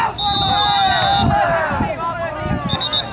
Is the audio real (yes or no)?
yes